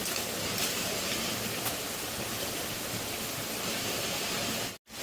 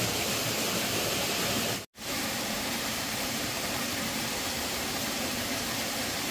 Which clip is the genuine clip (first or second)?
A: first